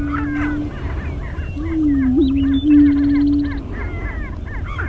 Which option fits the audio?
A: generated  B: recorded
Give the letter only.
B